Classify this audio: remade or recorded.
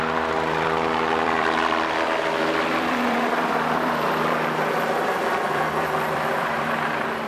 remade